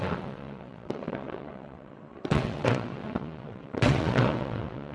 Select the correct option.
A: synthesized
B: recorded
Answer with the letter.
A